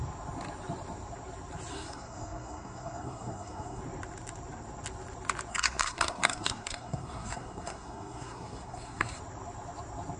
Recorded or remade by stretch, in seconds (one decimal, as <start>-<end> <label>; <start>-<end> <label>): 0.0-1.7 recorded; 1.7-3.8 remade; 3.8-5.5 recorded; 5.5-9.2 remade; 9.2-10.2 recorded